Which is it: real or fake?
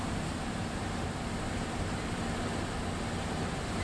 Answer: real